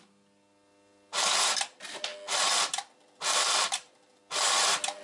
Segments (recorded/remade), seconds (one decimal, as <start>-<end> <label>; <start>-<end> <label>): 0.0-1.1 recorded; 1.1-1.6 remade; 1.6-3.3 recorded; 3.3-4.2 remade; 4.2-5.0 recorded